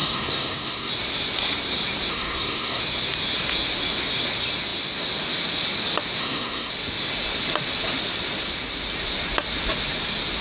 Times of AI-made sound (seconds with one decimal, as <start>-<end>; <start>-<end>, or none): 0.0-0.9; 2.1-2.8; 6.2-6.7